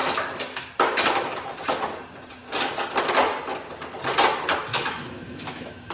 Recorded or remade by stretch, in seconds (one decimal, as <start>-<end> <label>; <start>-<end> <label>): 0.0-4.7 recorded; 4.7-5.9 remade